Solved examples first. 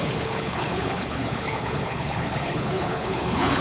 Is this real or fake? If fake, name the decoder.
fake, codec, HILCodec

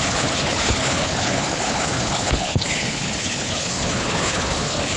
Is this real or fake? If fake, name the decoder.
fake, codec, HILCodec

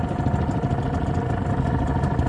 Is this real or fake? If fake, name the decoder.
real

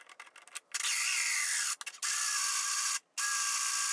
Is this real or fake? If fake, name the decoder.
real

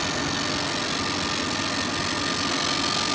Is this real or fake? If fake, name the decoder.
real